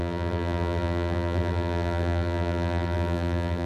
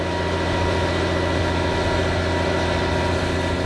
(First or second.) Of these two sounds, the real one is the second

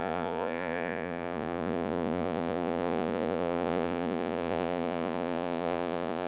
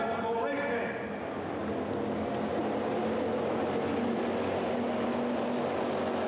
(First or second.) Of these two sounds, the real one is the second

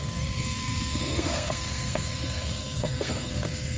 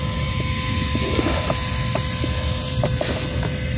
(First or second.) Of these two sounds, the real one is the second